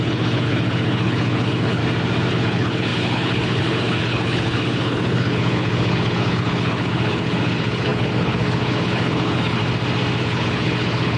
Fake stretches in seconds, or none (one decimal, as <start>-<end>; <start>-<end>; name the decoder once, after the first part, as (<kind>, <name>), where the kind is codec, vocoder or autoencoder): 0.0-1.8 (codec, HILCodec); 2.3-9.6; 10.2-11.2